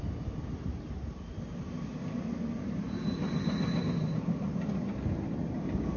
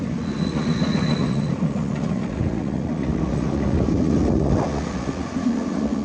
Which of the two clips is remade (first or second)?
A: second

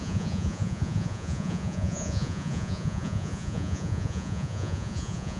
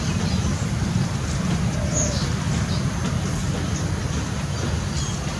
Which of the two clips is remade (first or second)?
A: first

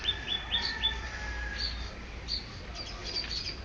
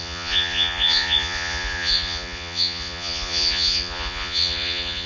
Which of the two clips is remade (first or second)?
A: second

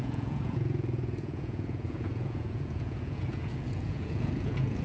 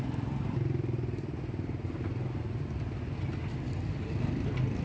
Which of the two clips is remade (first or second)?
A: first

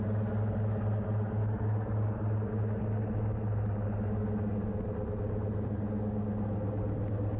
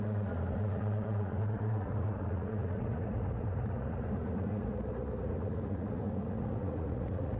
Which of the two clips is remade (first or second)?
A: second